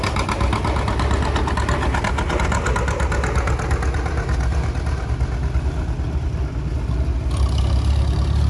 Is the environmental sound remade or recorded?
recorded